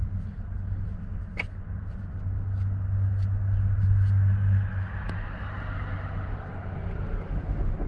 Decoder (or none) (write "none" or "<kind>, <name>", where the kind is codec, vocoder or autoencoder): none